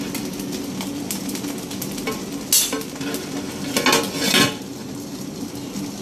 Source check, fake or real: real